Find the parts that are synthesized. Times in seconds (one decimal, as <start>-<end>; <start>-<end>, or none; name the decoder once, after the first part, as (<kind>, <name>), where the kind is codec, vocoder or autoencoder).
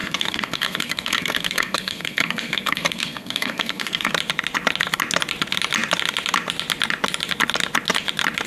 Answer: 0.0-4.1 (codec, SNAC)